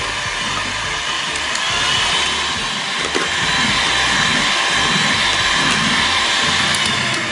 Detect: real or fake real